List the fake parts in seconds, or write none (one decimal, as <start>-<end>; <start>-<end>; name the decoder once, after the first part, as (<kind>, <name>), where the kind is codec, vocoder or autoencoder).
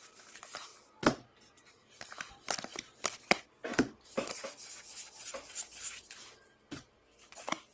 none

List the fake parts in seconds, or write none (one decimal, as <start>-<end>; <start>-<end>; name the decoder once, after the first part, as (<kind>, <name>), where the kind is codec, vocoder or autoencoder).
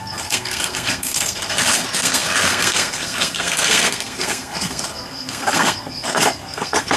0.0-7.0 (codec, SNAC)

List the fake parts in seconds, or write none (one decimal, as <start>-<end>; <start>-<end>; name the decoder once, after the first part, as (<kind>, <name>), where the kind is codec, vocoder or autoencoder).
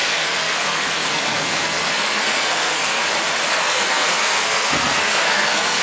0.0-3.0 (codec, SNAC); 3.5-5.8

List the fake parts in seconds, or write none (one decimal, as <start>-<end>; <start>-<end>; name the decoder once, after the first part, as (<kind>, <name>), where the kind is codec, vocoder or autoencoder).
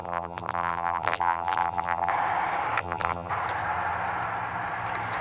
0.0-2.1 (vocoder, BigVGAN v2); 2.8-3.3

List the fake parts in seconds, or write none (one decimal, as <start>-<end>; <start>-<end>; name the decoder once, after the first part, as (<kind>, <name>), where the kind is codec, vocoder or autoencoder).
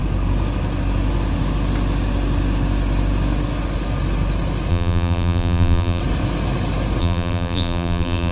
4.7-6.0 (vocoder, BigVGAN v2); 7.0-8.3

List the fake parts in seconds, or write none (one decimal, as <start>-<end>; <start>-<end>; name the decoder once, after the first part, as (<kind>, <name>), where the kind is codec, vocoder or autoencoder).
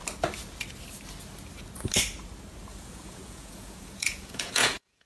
2.7-5.1 (vocoder, Vocos)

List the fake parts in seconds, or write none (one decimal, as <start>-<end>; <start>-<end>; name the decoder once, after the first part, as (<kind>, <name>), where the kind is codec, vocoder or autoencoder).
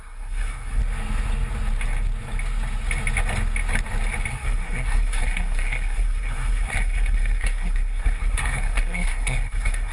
0.0-0.8 (codec, SNAC); 4.3-9.9